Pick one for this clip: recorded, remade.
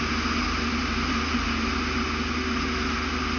recorded